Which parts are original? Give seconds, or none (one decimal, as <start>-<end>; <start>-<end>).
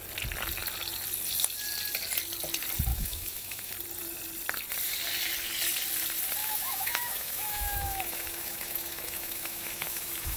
0.0-2.9; 3.7-6.4